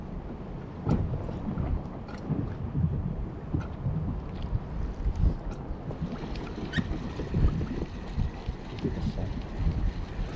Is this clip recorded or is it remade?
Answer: recorded